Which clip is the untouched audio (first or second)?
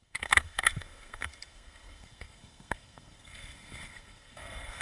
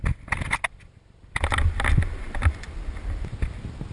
second